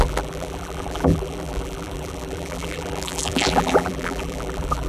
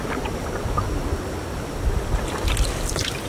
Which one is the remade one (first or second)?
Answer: first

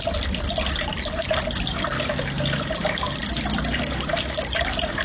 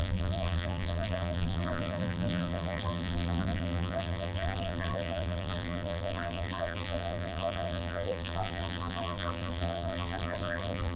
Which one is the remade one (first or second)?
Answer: second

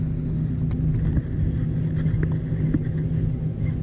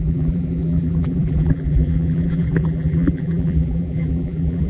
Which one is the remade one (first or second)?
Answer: second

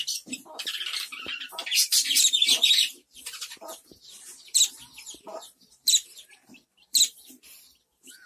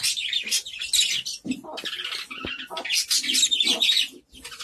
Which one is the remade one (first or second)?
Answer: first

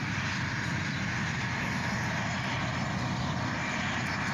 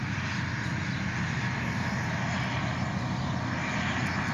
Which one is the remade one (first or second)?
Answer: first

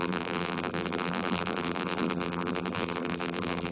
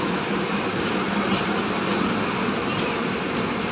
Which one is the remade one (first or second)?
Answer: first